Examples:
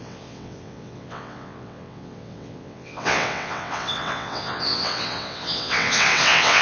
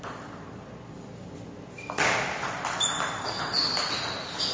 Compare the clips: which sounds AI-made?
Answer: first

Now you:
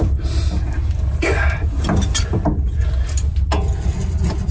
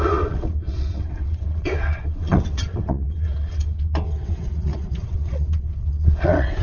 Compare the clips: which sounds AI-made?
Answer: second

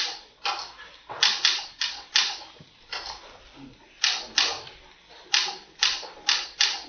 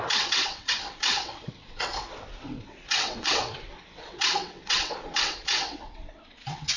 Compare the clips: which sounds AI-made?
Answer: second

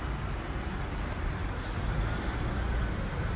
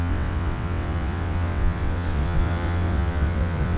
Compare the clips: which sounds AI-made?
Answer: second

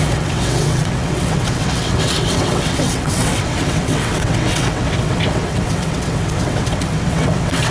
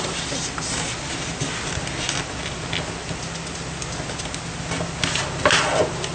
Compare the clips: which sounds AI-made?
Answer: first